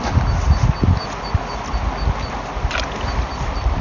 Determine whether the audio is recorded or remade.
recorded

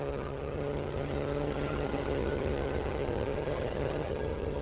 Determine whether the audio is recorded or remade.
remade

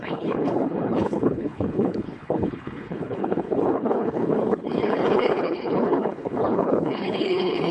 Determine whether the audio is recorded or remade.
remade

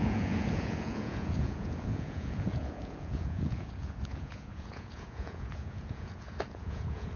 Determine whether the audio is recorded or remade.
remade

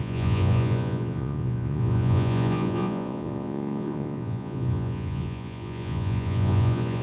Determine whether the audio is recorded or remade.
remade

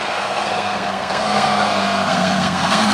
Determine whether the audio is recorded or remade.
remade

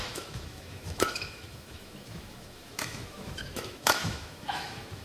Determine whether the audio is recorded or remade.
remade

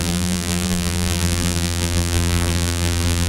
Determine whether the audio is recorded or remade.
remade